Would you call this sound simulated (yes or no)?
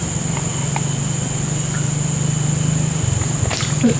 no